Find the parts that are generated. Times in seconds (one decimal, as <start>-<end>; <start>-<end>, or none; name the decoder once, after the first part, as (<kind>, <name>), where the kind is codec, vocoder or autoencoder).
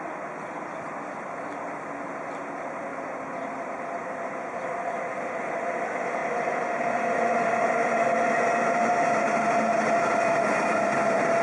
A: 0.0-2.9 (vocoder, BigVGAN v2); 5.8-11.4